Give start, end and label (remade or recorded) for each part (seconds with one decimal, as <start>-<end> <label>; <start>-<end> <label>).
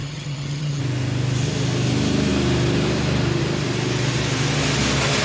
0.0-0.8 remade; 0.8-5.2 recorded